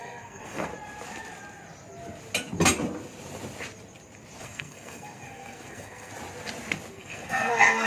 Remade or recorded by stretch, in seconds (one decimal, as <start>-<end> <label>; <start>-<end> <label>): 0.0-0.7 remade; 0.7-4.4 recorded; 4.4-6.1 remade; 6.1-6.9 recorded; 6.9-7.9 remade